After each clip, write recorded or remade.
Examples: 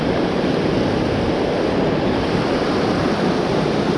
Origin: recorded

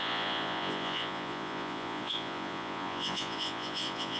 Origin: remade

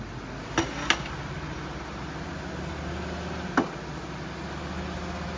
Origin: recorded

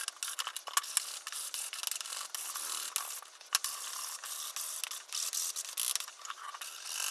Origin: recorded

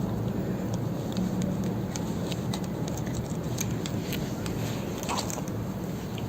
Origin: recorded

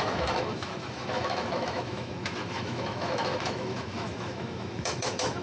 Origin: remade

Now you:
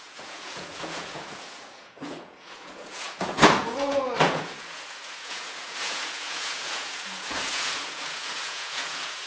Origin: remade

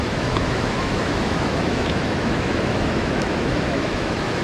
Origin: remade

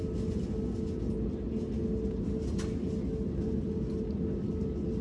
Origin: recorded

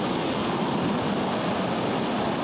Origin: recorded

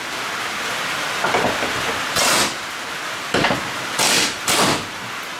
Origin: recorded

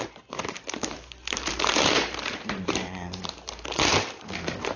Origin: remade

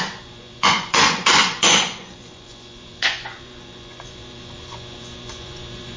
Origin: remade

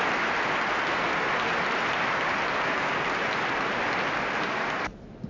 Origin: recorded